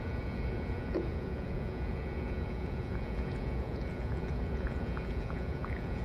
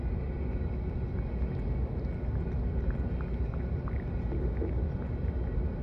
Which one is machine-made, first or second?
first